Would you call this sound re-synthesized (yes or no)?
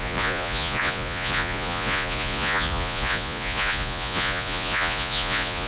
yes